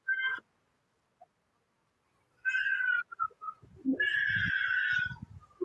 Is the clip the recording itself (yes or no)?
yes